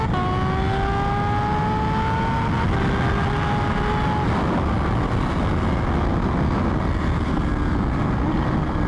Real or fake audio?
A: real